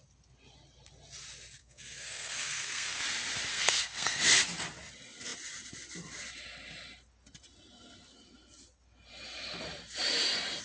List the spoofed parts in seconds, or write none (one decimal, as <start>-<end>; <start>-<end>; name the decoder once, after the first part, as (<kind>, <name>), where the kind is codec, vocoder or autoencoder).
1.6-3.0 (codec, SNAC); 3.5-4.2